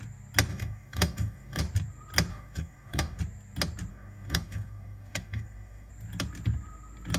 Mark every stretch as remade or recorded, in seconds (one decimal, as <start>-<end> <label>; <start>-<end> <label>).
0.0-0.5 recorded; 0.5-1.6 remade; 1.6-2.3 recorded; 2.3-3.2 remade; 3.2-3.9 recorded; 3.9-5.9 remade; 5.9-7.2 recorded